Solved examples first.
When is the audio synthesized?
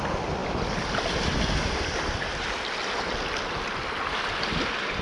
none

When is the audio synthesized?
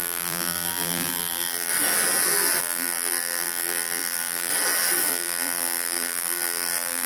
0.0-1.7 (vocoder, BigVGAN v2); 2.6-4.5; 5.1-7.1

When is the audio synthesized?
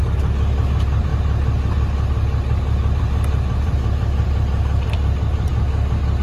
0.0-1.1 (vocoder, BigVGAN v2); 3.0-5.5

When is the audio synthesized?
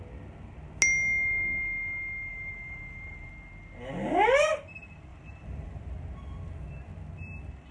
2.3-3.3 (vocoder, BigVGAN v2); 5.1-5.8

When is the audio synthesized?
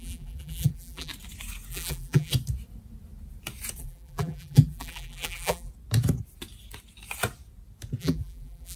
0.0-1.1 (vocoder, BigVGAN v2); 1.7-2.3; 3.8-5.7; 8.0-8.8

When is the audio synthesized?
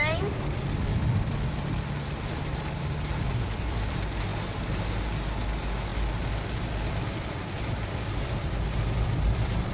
0.0-4.3 (vocoder, BigVGAN v2); 5.5-9.7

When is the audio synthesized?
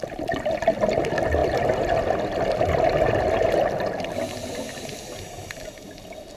none